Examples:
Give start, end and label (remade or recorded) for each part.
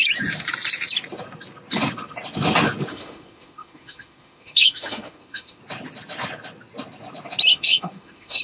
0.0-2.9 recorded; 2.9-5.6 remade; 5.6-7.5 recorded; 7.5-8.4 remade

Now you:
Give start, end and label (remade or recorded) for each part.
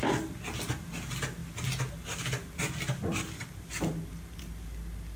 0.0-5.2 recorded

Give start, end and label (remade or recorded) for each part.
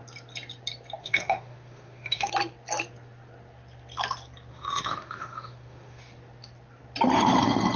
0.0-1.0 recorded; 1.0-2.3 remade; 2.3-4.5 recorded; 4.5-6.0 remade; 6.0-7.8 recorded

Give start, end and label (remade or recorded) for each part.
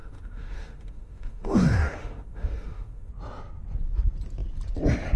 0.0-3.1 remade; 3.1-5.2 recorded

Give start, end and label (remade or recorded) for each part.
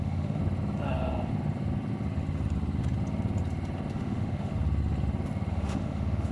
0.0-0.4 remade; 0.4-3.9 recorded; 3.9-4.5 remade; 4.5-5.5 recorded; 5.5-6.3 remade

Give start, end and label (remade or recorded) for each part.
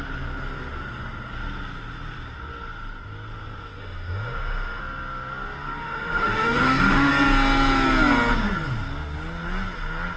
0.0-3.8 recorded; 3.8-4.8 remade; 4.8-5.8 recorded; 5.8-7.1 remade; 7.1-10.2 recorded